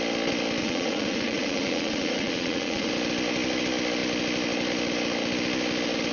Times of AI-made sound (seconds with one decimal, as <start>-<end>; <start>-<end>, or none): 0.6-2.9